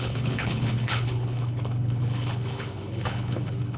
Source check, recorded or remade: remade